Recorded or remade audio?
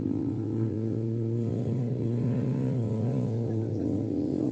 remade